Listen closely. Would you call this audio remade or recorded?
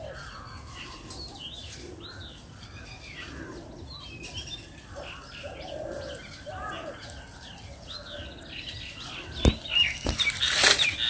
recorded